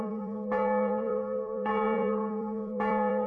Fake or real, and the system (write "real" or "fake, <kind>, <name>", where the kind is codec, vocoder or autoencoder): fake, vocoder, BigVGAN v2